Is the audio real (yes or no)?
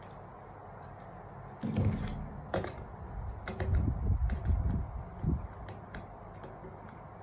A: yes